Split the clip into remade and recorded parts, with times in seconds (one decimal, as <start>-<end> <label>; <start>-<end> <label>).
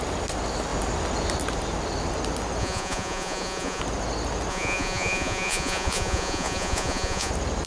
0.0-2.6 recorded; 2.6-3.8 remade; 3.8-4.5 recorded; 4.5-7.3 remade; 7.3-7.7 recorded